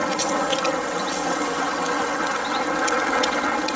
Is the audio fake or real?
fake